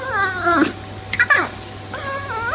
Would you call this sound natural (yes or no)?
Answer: yes